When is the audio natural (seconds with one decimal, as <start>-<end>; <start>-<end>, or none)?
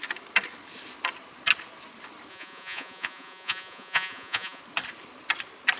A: 0.0-2.3; 4.6-5.8